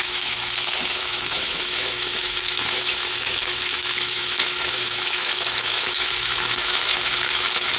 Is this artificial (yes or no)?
yes